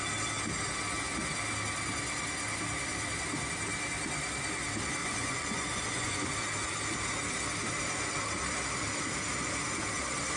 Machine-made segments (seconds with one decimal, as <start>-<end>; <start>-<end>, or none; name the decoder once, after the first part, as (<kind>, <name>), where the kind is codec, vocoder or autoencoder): 5.0-6.3 (vocoder, Vocos)